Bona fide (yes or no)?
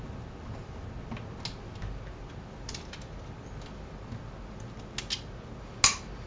yes